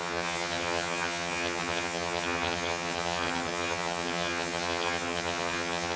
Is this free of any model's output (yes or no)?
no